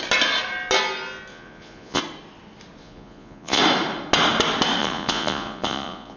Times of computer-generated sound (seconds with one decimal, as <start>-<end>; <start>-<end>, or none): 1.3-2.0; 2.8-3.6; 4.8-6.2

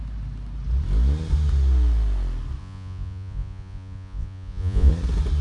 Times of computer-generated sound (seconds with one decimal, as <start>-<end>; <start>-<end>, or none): 2.6-4.9

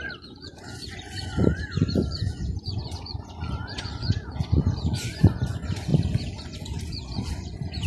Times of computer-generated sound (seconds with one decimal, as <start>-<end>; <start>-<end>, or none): 0.0-5.9; 6.4-7.9

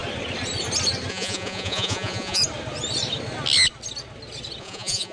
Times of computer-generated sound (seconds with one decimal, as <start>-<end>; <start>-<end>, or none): 1.1-2.4; 4.6-5.1

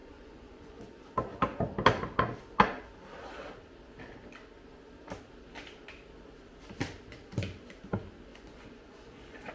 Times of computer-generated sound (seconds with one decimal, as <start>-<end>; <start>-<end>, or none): 0.0-0.8; 8.3-9.5

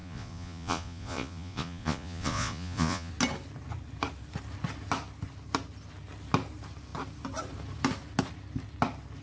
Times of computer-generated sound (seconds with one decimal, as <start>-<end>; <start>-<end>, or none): 0.0-3.1